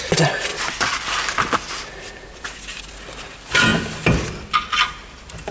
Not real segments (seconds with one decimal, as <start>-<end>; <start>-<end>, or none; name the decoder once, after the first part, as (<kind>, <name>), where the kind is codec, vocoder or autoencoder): 0.5-2.9 (vocoder, BigVGAN v2)